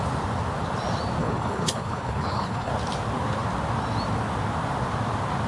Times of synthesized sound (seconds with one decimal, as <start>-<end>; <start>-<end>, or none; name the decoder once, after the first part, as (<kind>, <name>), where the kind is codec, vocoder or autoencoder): 1.2-2.7 (codec, HILCodec)